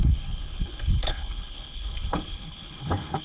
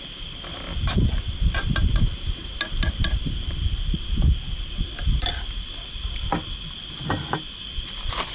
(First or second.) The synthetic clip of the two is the first